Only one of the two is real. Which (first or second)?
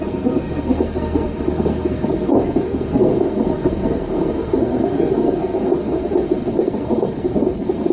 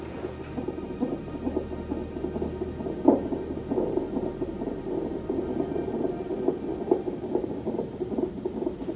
second